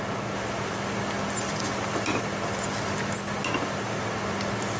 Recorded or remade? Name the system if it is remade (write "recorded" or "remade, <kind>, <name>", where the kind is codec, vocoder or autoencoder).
recorded